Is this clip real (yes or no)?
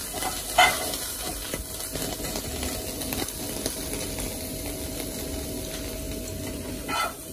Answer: yes